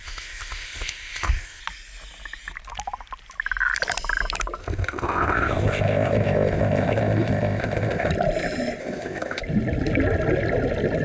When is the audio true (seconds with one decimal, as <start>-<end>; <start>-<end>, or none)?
1.6-4.6; 8.1-8.8; 9.4-11.0